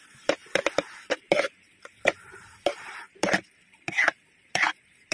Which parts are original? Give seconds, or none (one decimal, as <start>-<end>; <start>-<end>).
none